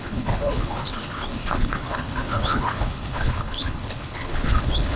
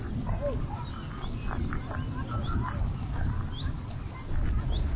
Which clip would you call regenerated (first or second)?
first